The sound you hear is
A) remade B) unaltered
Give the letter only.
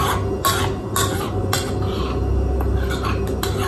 B